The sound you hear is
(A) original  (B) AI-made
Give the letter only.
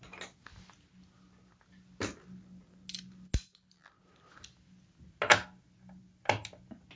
A